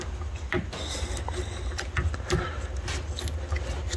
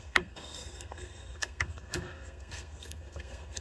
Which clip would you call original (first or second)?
first